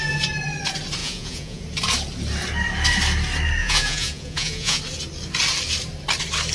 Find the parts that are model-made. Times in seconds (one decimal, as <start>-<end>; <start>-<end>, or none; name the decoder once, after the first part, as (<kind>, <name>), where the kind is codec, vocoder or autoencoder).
1.0-1.6 (vocoder, Vocos); 3.6-4.8